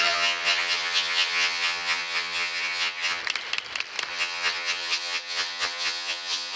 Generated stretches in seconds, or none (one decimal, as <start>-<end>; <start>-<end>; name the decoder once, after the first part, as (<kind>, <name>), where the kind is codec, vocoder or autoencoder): 0.0-3.2 (vocoder, HiFi-GAN); 4.1-6.6